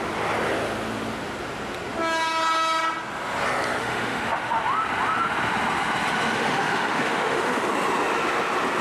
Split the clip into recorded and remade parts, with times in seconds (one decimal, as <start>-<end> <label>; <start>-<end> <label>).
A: 0.0-3.8 recorded; 3.8-4.6 remade; 4.6-6.4 recorded; 6.4-7.7 remade; 7.7-8.8 recorded